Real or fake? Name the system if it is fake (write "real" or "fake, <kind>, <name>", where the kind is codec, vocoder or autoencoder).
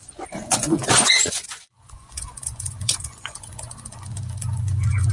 fake, vocoder, Vocos